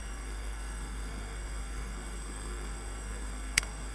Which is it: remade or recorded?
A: remade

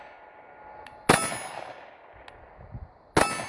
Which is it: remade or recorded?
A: recorded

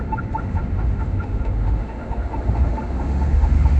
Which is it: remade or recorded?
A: remade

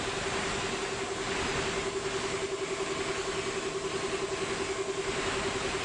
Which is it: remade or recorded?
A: recorded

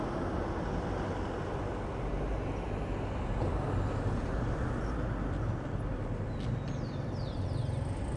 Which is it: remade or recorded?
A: recorded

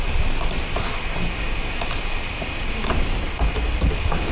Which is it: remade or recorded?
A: remade